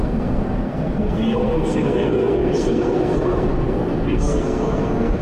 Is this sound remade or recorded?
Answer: remade